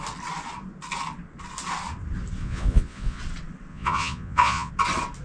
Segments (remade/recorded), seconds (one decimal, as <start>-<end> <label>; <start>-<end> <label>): 0.0-2.4 recorded; 2.4-3.2 remade; 3.2-3.7 recorded; 3.7-4.7 remade; 4.7-5.2 recorded